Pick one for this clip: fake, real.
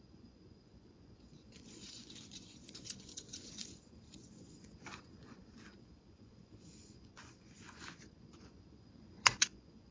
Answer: fake